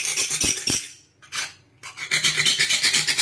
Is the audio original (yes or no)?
yes